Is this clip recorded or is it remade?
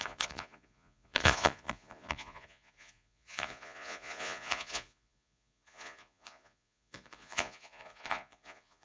remade